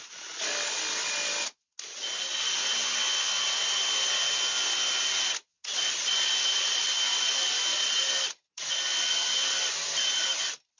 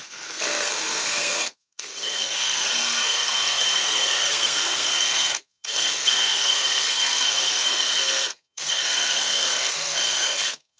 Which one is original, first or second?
first